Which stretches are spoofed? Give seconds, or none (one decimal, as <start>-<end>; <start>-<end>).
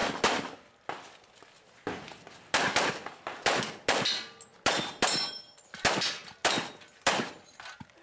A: none